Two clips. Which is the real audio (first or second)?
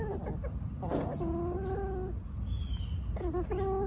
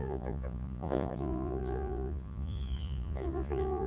first